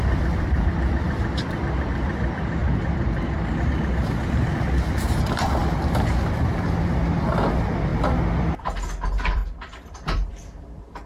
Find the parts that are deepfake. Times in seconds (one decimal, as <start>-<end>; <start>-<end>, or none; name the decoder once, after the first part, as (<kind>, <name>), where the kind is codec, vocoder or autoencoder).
0.0-2.6 (vocoder, BigVGAN v2); 4.2-5.6; 6.4-7.9; 8.8-9.4; 9.9-11.1